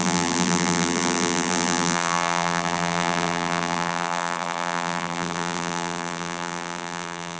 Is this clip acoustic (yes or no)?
no